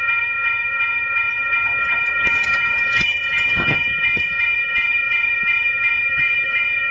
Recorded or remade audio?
remade